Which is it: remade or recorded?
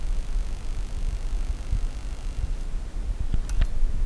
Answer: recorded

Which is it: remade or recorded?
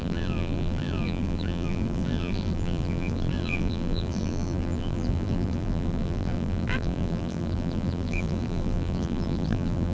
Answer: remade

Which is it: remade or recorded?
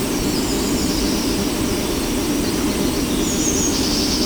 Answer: recorded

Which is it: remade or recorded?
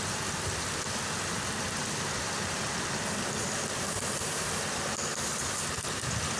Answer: recorded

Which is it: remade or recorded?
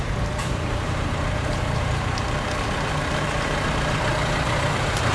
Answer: remade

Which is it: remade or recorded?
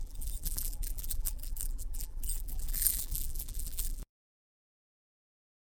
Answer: remade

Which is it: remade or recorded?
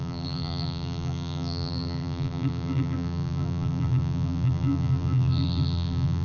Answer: remade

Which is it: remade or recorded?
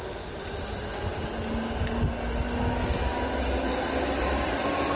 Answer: recorded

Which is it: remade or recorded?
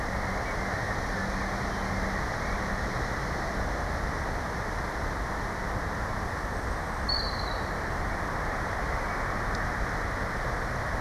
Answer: recorded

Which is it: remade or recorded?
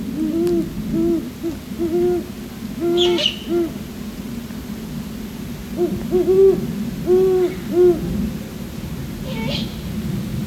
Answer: recorded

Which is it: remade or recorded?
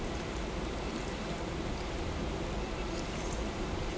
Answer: recorded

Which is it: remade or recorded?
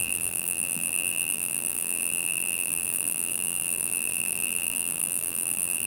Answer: remade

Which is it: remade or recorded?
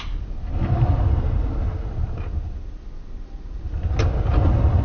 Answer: recorded